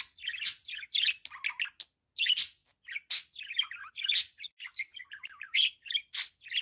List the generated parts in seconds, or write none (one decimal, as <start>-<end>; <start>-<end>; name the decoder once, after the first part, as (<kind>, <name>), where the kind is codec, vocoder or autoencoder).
none